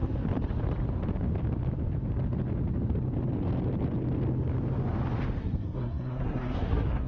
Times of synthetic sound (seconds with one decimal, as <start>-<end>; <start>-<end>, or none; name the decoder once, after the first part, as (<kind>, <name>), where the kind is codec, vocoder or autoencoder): 5.4-7.1 (codec, SNAC)